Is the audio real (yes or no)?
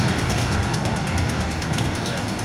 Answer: no